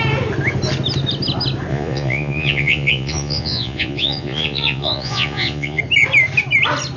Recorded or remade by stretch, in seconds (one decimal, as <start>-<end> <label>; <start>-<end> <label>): 0.0-1.7 recorded; 1.7-5.8 remade; 5.8-7.0 recorded